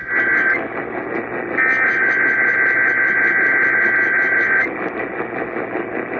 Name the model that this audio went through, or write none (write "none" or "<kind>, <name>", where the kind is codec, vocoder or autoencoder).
none